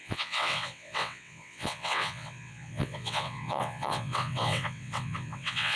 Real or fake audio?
fake